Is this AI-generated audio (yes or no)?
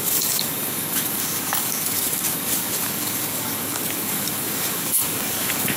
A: yes